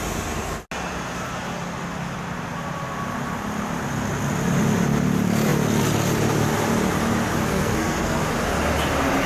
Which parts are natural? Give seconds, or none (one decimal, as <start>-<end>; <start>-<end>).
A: 0.0-7.4; 8.2-9.3